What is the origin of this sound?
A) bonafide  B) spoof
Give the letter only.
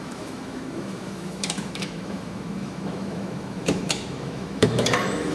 B